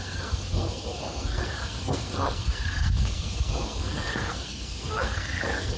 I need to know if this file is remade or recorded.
remade